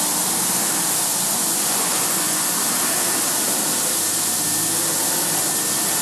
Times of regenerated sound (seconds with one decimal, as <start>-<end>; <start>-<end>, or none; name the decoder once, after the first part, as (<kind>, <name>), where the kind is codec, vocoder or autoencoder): 1.1-2.6 (vocoder, Vocos)